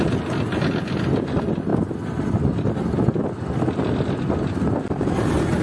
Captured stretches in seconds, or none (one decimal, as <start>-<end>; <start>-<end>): 0.0-5.6